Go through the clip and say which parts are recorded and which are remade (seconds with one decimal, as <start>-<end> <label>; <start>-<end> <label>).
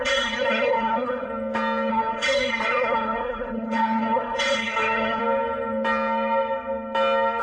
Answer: 0.0-1.3 remade; 1.3-1.9 recorded; 1.9-5.2 remade; 5.2-7.4 recorded